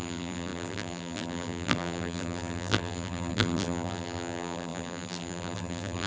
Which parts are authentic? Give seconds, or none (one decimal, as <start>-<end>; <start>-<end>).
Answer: none